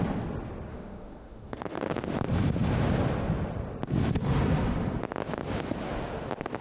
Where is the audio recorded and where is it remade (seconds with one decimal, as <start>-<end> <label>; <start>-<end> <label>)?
0.0-0.7 recorded; 0.7-1.9 remade; 1.9-6.6 recorded